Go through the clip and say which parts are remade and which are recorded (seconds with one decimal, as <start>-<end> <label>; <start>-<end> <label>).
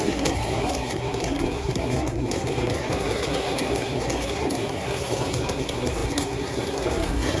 0.0-7.4 remade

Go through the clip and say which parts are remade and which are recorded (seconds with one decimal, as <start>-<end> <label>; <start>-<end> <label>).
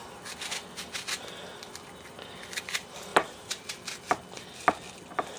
0.0-3.1 recorded; 3.1-3.7 remade; 3.7-5.4 recorded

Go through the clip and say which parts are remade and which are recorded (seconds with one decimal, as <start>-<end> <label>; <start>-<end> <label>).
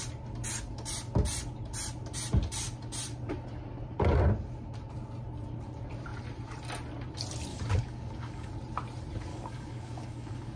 0.0-7.5 recorded; 7.5-8.5 remade; 8.5-9.3 recorded; 9.3-10.6 remade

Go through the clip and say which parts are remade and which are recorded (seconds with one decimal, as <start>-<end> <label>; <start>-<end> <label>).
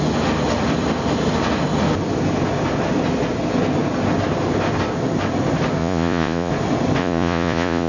0.0-5.8 recorded; 5.8-6.5 remade; 6.5-7.0 recorded; 7.0-7.9 remade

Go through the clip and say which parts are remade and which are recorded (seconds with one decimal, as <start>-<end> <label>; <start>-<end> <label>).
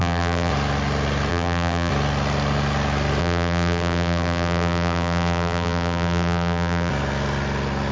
0.0-0.5 remade; 0.5-1.3 recorded; 1.3-1.9 remade; 1.9-3.2 recorded; 3.2-6.9 remade; 6.9-7.9 recorded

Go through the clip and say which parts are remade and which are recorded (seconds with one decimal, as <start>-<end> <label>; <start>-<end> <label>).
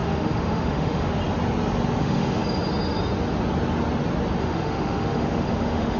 0.0-1.2 remade; 1.2-2.0 recorded; 2.0-2.4 remade; 2.4-4.4 recorded; 4.4-6.0 remade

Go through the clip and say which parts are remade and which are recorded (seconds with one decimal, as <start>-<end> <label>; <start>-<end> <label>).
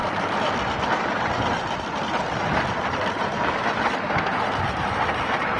0.0-5.6 recorded